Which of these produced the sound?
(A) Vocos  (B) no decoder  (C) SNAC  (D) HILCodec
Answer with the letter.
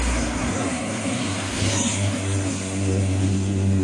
C